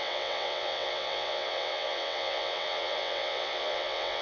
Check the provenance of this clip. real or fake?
fake